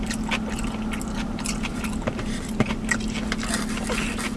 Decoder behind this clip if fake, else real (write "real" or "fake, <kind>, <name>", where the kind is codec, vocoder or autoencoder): real